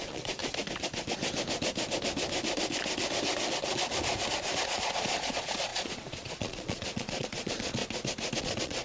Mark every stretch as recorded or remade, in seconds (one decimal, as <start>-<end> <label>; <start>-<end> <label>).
0.0-0.4 remade; 0.4-4.6 recorded; 4.6-7.8 remade; 7.8-8.4 recorded; 8.4-8.8 remade